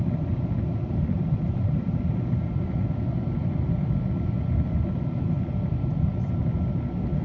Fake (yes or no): no